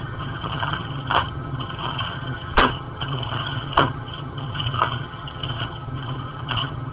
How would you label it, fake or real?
fake